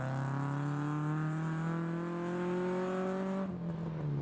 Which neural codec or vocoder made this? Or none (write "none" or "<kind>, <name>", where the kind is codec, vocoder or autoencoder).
none